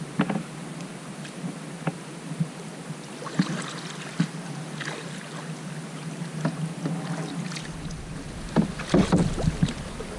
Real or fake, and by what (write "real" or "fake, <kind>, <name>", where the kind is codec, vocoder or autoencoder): real